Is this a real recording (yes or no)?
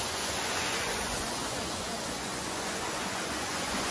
no